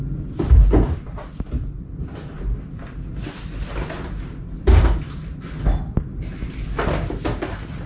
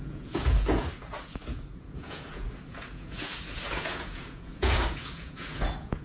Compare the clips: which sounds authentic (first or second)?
first